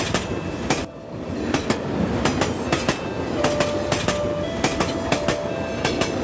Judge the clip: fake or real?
real